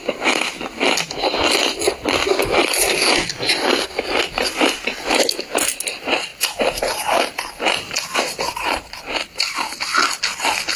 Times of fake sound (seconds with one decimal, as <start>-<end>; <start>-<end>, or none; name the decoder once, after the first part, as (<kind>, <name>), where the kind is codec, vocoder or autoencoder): 6.3-9.0 (vocoder, BigVGAN v2)